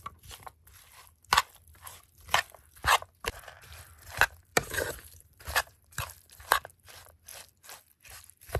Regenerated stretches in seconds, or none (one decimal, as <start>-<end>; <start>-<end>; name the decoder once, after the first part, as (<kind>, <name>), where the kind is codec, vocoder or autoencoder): 4.5-6.0 (vocoder, BigVGAN v2)